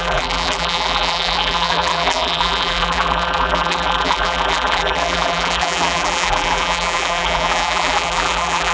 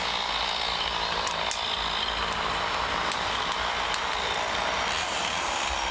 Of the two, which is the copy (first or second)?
first